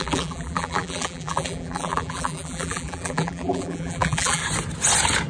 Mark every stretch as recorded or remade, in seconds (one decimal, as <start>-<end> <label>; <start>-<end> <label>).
0.0-4.4 remade; 4.4-5.3 recorded